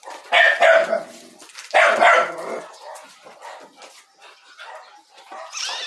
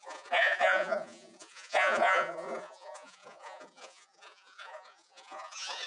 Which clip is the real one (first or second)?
first